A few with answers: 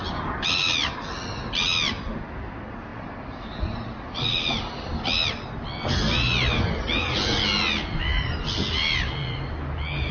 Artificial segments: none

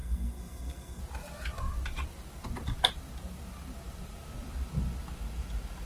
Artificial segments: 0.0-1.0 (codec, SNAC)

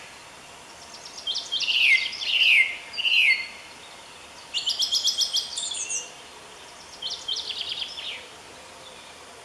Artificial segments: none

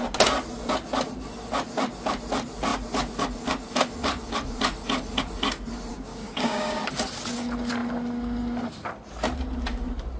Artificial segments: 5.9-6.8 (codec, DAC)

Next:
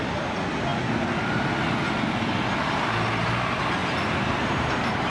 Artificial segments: 3.8-5.1 (vocoder, BigVGAN v2)

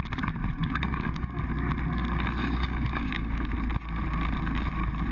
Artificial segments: 0.6-1.4 (codec, DAC); 2.4-3.5

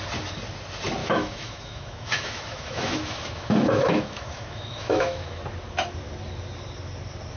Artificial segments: 1.0-5.4 (autoencoder, DAC-VAE)